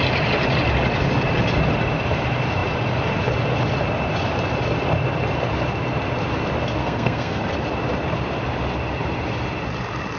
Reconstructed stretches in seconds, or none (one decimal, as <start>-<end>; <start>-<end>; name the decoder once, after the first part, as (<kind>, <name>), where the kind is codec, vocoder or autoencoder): 6.8-7.4 (codec, SNAC)